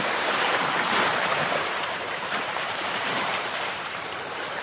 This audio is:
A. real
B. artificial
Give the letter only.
B